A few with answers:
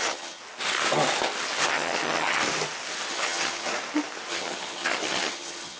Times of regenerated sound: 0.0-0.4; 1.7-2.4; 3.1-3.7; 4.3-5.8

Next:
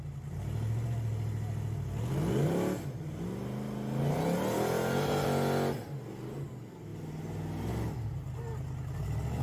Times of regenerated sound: none

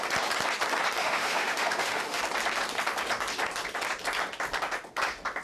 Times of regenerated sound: 1.0-2.2

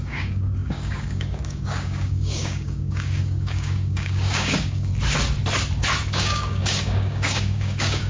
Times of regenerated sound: 0.0-4.9; 6.1-8.1

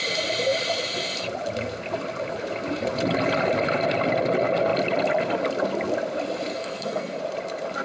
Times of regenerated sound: 6.5-7.2

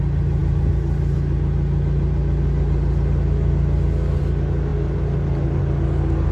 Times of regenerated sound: none

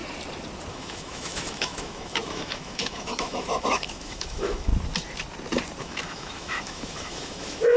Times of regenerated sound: 0.7-4.7; 5.8-7.8

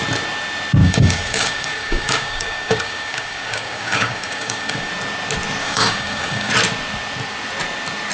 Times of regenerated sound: 0.8-4.9; 5.6-6.5